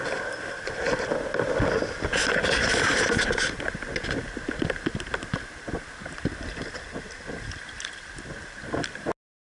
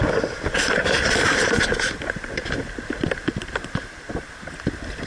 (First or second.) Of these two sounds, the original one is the first